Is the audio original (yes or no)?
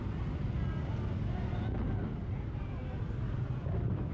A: yes